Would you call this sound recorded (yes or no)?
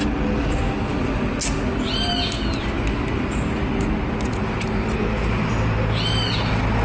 yes